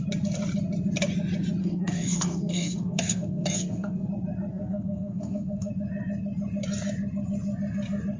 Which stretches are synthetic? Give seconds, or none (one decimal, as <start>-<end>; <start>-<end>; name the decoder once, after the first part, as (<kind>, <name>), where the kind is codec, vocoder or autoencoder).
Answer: 1.6-4.1 (codec, SNAC); 4.5-5.7